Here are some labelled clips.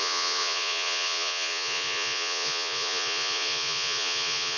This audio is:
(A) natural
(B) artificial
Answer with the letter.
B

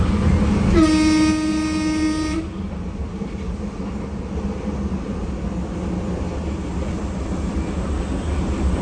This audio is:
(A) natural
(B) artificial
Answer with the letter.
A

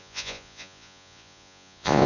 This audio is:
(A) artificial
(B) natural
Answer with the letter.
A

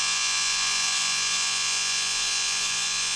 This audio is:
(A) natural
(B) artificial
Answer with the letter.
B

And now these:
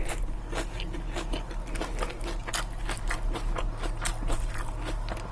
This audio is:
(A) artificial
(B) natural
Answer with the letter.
B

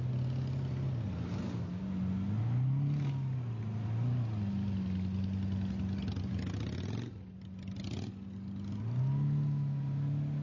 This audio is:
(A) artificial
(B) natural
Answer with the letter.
B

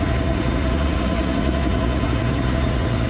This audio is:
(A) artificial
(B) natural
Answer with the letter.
A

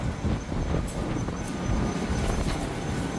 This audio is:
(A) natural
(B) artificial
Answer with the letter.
A